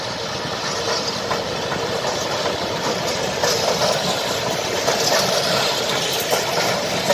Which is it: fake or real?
real